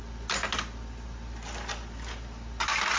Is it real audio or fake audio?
real